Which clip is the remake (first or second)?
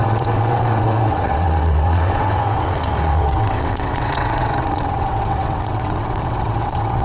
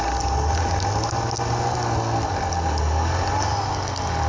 first